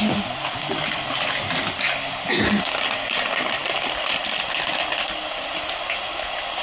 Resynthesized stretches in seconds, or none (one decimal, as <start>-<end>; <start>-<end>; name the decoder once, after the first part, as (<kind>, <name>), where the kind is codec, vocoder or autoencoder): none